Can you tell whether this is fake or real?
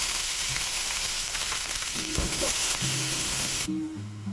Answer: fake